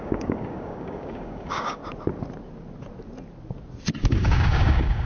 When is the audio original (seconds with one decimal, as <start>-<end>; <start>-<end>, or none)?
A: 1.8-4.0

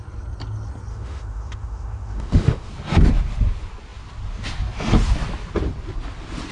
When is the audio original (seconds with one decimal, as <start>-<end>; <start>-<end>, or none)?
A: 0.0-0.9; 2.7-6.5

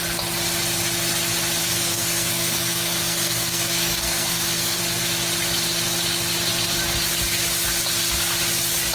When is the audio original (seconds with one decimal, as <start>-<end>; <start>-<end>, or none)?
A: 0.0-1.6; 4.8-8.9

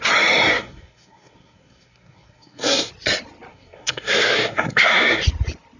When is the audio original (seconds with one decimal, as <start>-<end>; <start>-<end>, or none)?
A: 0.0-0.5; 2.9-3.5; 5.2-5.8

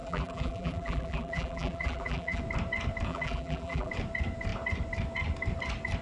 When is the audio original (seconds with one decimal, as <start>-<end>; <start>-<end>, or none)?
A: 2.4-3.1; 3.9-6.0